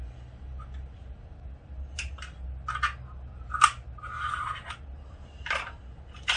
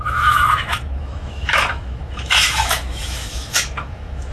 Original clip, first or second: first